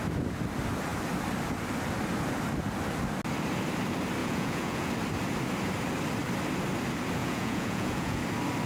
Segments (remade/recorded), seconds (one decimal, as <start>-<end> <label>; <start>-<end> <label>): 0.0-4.2 recorded; 4.2-4.9 remade; 4.9-7.2 recorded; 7.2-8.2 remade; 8.2-8.7 recorded